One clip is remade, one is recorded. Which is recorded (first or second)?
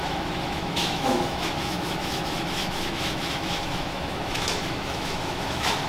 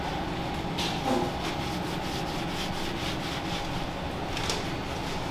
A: second